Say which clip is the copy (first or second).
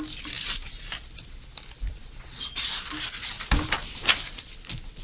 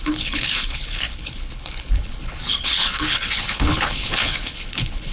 second